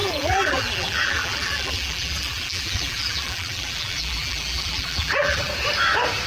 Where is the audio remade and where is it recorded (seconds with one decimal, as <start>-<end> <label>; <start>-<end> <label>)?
0.0-5.5 remade; 5.5-6.3 recorded